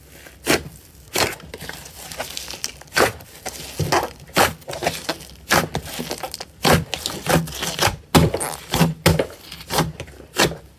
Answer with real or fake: real